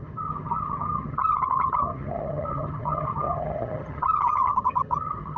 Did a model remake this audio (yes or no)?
yes